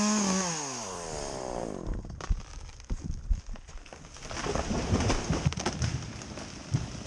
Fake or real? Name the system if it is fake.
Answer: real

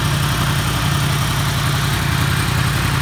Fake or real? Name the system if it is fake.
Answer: real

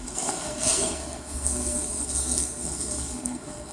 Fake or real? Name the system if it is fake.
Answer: fake, codec, SNAC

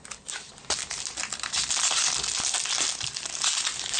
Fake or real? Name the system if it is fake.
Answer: real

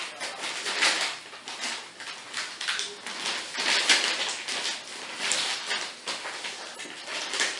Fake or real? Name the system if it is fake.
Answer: real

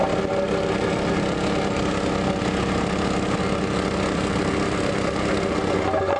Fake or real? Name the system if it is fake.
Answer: real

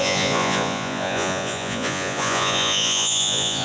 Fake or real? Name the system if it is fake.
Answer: fake, vocoder, Vocos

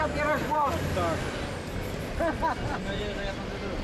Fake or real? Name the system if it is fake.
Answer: real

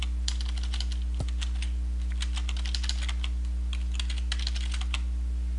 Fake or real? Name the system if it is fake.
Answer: real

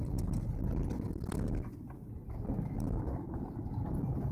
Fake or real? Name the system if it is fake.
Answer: real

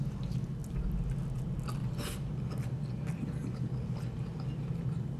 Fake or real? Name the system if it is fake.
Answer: real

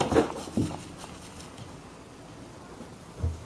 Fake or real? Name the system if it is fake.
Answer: real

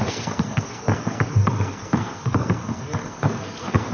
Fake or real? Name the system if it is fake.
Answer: fake, codec, SNAC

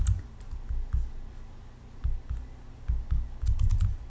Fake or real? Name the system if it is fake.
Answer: real